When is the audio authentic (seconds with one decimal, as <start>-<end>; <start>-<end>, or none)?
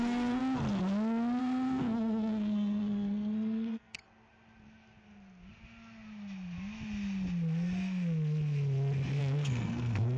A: 0.4-1.4; 4.0-9.2